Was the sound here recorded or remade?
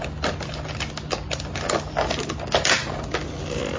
recorded